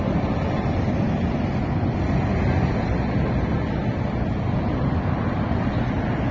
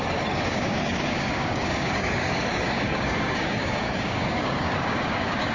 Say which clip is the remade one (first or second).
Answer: second